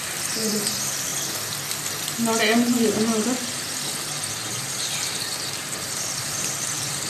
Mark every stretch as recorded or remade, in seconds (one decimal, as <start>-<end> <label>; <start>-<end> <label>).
0.0-1.1 remade; 1.1-4.3 recorded; 4.3-7.1 remade